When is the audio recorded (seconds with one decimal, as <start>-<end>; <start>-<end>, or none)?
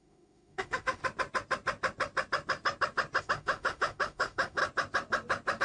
1.0-3.2; 4.6-5.6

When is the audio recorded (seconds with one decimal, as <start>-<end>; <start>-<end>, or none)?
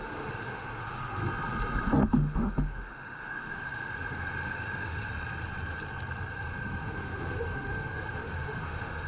1.2-2.0; 5.1-6.3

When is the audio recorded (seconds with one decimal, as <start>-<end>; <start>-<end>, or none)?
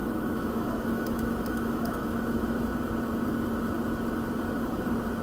2.5-5.2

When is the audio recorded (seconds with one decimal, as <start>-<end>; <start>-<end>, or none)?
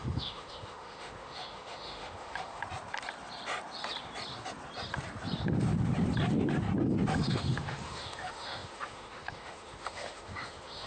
2.6-7.1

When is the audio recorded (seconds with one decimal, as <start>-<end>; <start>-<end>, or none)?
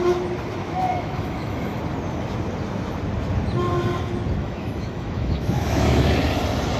0.0-0.6; 1.8-4.4; 6.1-6.8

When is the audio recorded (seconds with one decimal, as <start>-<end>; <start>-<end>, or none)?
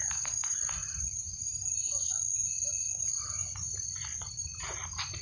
0.0-5.2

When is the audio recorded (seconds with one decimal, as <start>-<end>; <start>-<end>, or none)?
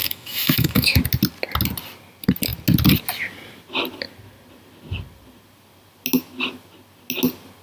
1.0-7.6